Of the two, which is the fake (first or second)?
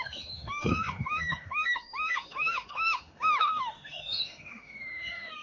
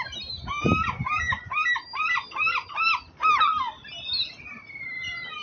first